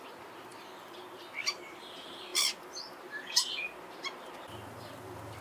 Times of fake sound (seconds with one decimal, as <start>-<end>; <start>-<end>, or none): none